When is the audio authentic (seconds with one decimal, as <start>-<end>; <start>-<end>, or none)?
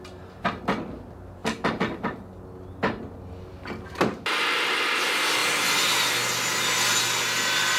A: 0.0-7.8